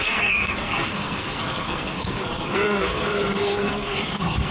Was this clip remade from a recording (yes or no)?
yes